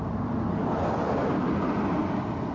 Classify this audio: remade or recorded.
recorded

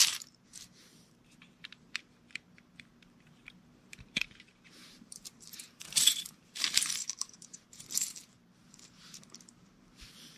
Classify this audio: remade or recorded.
remade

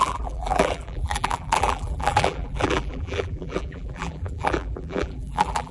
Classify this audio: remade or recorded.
remade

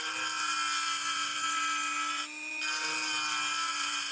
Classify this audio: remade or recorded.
recorded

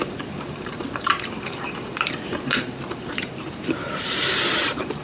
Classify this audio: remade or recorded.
remade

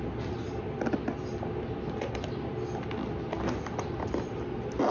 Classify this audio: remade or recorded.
recorded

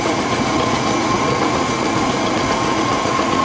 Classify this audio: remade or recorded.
remade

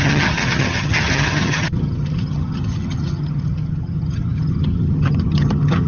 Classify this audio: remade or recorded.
remade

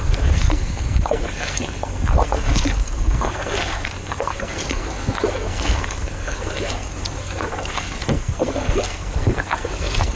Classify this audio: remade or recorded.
remade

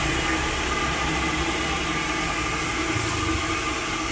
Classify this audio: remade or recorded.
recorded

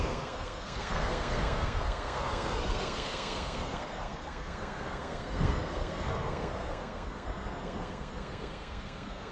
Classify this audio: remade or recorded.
remade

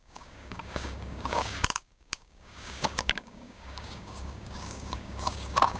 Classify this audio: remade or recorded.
remade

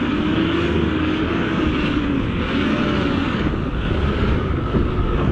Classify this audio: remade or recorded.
remade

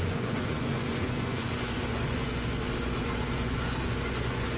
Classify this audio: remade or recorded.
remade